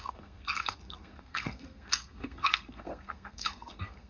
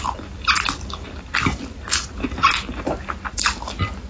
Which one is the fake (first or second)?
first